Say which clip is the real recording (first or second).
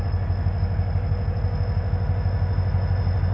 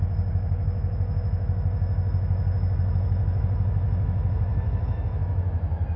first